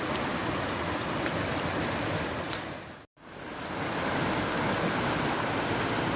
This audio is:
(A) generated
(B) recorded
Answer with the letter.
B